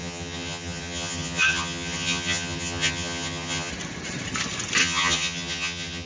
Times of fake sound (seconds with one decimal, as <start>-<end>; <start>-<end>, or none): 0.0-3.7; 4.8-6.1